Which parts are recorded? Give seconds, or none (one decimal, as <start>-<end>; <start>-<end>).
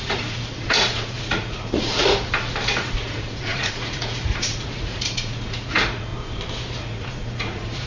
2.0-2.8; 6.1-6.8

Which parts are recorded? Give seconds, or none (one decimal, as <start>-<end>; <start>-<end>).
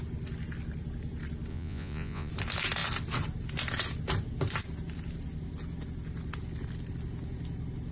0.0-1.5; 2.3-7.9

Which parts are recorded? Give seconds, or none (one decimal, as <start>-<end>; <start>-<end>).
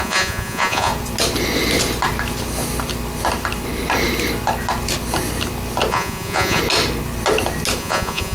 0.9-5.9; 6.6-7.8